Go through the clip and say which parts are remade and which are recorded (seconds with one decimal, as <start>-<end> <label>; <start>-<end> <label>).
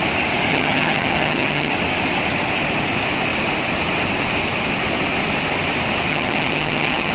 0.0-0.5 recorded; 0.5-1.7 remade; 1.7-6.1 recorded; 6.1-7.1 remade